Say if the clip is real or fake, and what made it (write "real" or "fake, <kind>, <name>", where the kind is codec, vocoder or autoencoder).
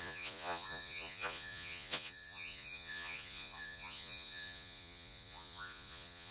fake, vocoder, Vocos